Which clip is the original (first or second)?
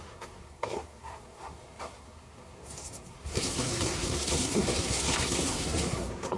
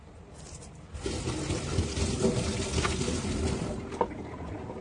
second